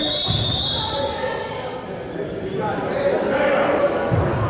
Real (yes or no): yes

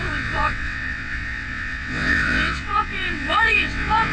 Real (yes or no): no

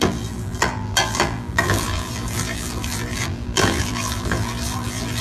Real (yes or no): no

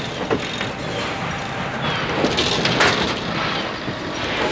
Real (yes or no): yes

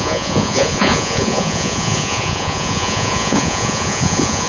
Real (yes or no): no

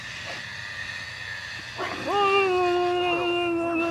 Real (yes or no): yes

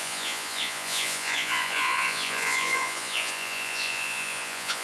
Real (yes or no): no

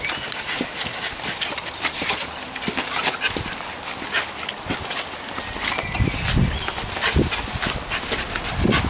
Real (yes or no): yes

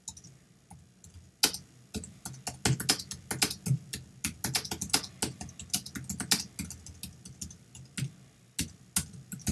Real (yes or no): yes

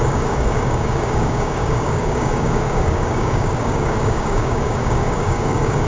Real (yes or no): no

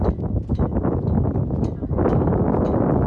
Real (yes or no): yes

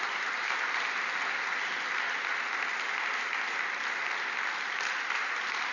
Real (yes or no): yes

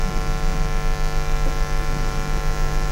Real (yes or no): no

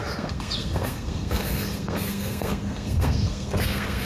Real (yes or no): no